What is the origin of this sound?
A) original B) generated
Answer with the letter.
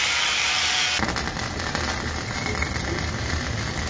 A